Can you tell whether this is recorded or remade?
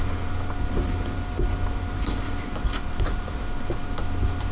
recorded